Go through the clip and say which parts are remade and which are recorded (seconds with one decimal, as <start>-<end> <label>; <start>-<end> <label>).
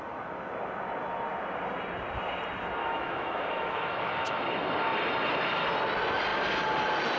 0.0-2.8 recorded; 2.8-4.4 remade; 4.4-7.2 recorded